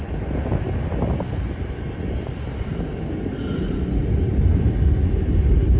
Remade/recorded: recorded